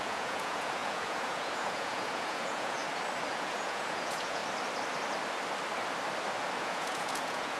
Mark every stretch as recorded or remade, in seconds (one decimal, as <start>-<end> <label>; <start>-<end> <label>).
0.0-2.8 remade; 2.8-3.3 recorded; 3.3-4.4 remade; 4.4-6.6 recorded; 6.6-7.6 remade